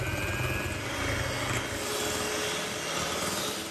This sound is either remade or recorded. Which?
recorded